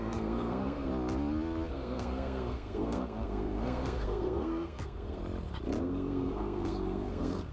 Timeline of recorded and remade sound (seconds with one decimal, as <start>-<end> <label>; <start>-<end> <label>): 0.0-0.9 remade; 0.9-1.7 recorded; 1.7-5.2 remade; 5.2-5.8 recorded; 5.8-7.5 remade